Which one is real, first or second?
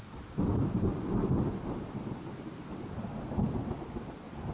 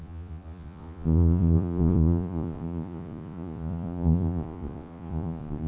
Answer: first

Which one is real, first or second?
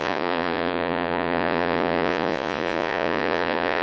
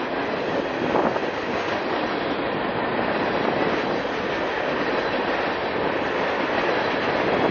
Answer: second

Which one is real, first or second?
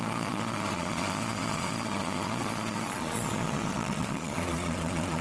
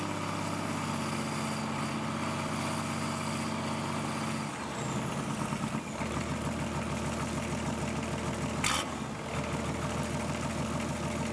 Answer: second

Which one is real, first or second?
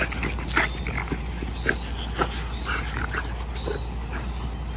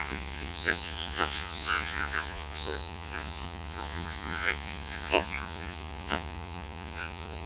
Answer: first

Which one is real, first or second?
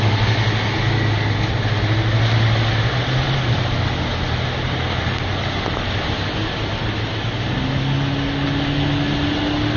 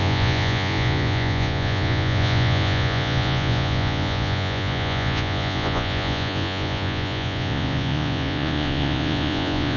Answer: first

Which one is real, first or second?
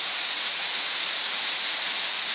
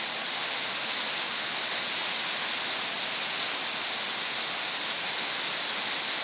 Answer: second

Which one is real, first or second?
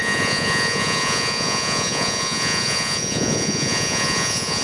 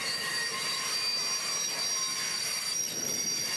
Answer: second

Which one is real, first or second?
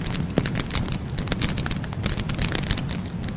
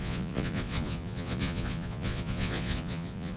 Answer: first